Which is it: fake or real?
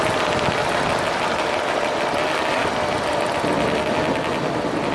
real